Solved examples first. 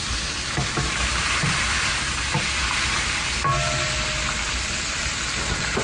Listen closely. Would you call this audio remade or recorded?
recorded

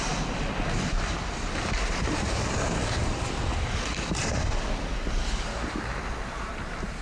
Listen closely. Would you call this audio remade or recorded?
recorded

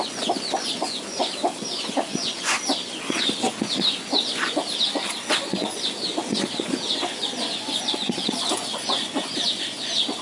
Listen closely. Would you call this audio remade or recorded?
remade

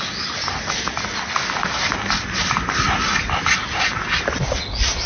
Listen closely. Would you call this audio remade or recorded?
recorded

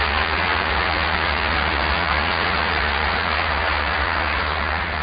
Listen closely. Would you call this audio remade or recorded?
remade